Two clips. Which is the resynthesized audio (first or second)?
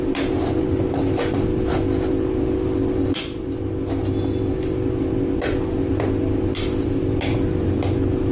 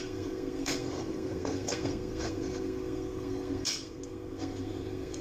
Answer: second